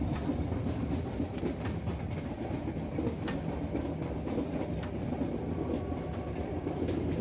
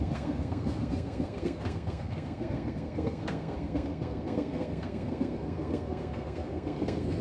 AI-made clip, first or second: second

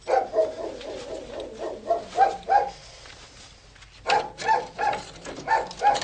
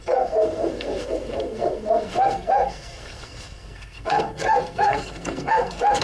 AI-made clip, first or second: second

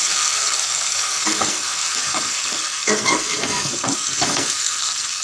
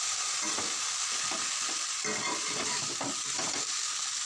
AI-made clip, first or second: first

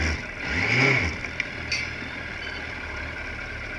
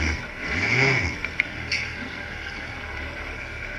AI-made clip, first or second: second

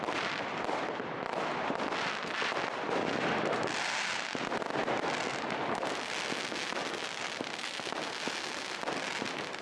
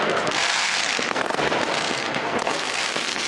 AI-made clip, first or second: second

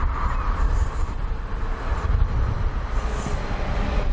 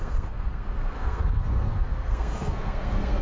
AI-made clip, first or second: second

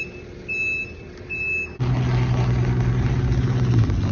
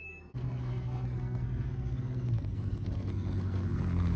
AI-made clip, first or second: second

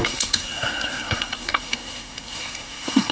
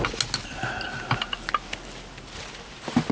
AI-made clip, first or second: first